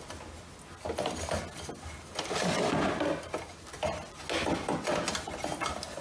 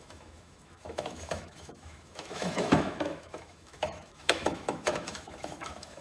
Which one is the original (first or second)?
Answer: first